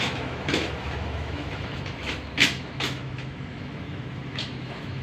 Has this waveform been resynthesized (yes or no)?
yes